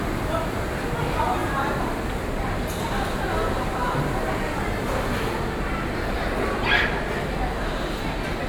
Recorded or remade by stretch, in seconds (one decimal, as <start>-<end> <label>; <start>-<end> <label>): 0.0-8.5 recorded